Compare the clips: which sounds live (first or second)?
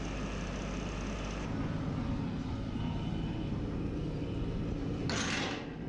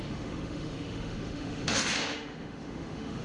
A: first